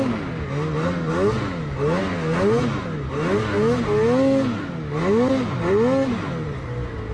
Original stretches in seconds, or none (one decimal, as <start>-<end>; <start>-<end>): 0.0-7.1